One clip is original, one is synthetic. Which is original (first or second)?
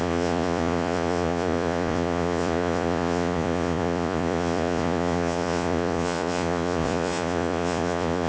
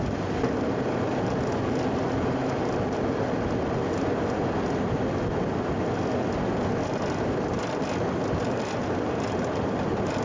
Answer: second